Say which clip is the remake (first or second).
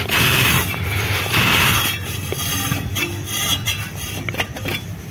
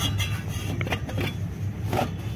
first